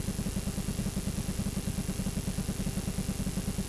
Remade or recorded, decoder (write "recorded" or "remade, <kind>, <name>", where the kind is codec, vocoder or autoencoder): recorded